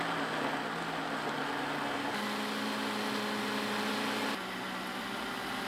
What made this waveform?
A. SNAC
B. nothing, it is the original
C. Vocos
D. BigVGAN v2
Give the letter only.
B